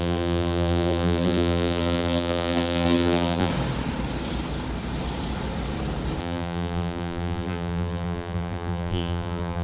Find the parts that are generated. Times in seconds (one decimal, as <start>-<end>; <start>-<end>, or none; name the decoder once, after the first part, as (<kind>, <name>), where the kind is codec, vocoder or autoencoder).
0.0-3.5 (vocoder, BigVGAN v2); 6.2-9.6